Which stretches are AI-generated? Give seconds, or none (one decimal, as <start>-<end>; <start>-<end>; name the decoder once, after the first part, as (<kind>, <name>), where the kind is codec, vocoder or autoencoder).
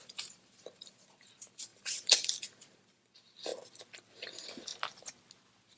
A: 0.0-3.5 (vocoder, BigVGAN v2); 4.1-4.7